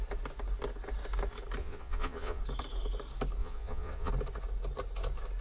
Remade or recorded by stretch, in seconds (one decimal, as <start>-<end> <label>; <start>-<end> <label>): 0.0-1.6 recorded; 1.6-2.4 remade; 2.4-3.4 recorded; 3.4-4.1 remade; 4.1-5.4 recorded